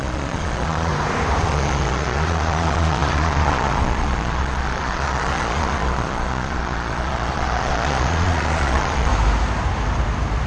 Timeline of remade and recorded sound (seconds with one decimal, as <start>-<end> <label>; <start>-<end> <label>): 0.0-0.9 remade; 0.9-1.4 recorded; 1.4-9.1 remade; 9.1-10.5 recorded